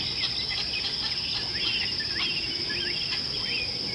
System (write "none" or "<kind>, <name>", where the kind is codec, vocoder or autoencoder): none